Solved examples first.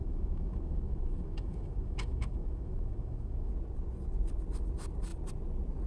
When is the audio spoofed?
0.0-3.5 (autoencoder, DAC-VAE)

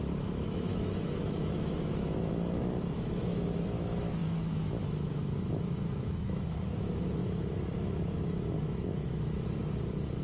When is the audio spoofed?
0.0-9.6 (autoencoder, DAC-VAE)

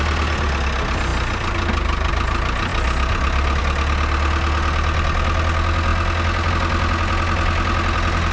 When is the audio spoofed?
none

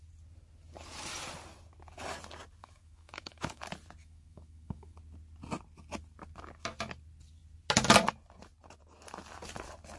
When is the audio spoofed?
2.6-3.6 (autoencoder, DAC-VAE); 4.0-5.0